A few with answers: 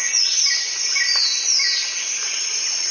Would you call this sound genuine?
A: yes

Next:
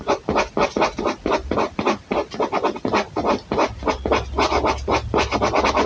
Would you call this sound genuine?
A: yes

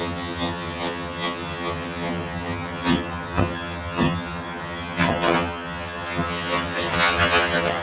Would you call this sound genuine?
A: no